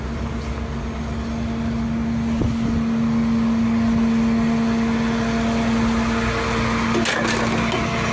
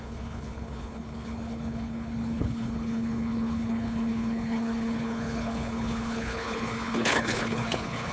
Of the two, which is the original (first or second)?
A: first